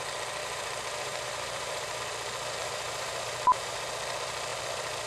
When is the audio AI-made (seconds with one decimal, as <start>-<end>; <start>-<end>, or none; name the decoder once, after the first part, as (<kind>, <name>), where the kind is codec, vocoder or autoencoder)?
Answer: 0.4-2.0 (vocoder, BigVGAN v2); 2.6-3.9